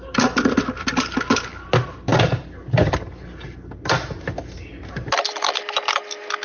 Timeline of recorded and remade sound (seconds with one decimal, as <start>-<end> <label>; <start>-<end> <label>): 0.0-6.4 recorded